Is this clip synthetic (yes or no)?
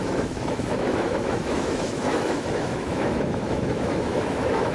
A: yes